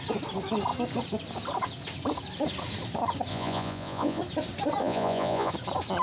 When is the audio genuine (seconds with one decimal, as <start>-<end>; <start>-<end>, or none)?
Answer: 0.0-3.3; 4.2-4.8; 5.5-6.0